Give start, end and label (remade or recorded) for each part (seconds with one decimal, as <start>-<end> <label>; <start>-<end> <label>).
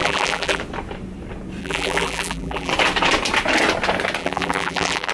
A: 0.0-0.6 remade; 0.6-1.6 recorded; 1.6-2.7 remade; 2.7-4.2 recorded; 4.2-5.1 remade